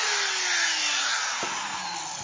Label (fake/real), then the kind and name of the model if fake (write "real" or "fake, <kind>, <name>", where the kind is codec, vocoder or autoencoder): real